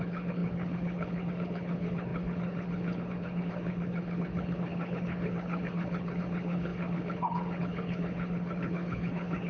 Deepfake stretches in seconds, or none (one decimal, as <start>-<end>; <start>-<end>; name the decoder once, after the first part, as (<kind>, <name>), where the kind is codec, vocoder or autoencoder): 0.0-9.5 (codec, HILCodec)